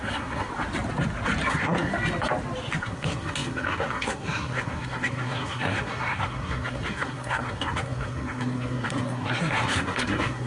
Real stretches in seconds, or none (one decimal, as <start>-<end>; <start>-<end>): 0.5-1.5; 1.9-2.8